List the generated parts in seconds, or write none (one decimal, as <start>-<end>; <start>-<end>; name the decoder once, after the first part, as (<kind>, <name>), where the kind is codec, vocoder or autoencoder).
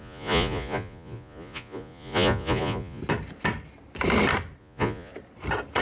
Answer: 0.0-3.0 (vocoder, Vocos); 4.6-5.1